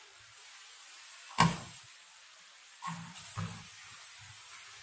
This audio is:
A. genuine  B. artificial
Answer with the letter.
A